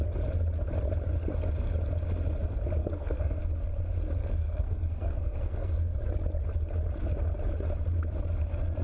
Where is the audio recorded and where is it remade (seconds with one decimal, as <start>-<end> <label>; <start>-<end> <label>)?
0.0-2.8 recorded; 2.8-3.4 remade; 3.4-4.2 recorded; 4.2-6.0 remade; 6.0-8.8 recorded